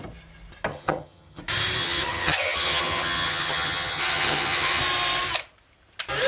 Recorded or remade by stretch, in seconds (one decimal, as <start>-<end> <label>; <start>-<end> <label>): 0.0-0.7 recorded; 0.7-1.4 remade; 1.4-1.8 recorded; 1.8-4.8 remade; 4.8-6.3 recorded